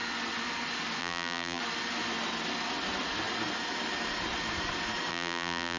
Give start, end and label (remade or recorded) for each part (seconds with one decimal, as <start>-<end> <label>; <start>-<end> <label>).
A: 0.0-1.0 recorded; 1.0-1.6 remade; 1.6-5.1 recorded; 5.1-5.8 remade